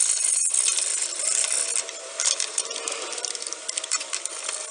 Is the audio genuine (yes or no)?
yes